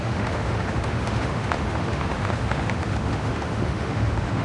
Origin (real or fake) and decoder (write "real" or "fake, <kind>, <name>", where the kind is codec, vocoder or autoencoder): fake, autoencoder, DAC-VAE